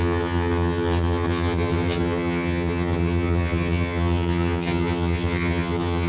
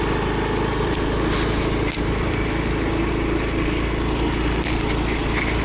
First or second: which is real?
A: second